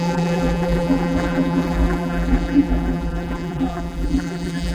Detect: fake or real fake